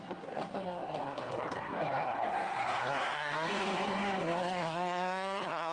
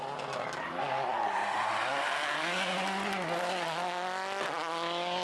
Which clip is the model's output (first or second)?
first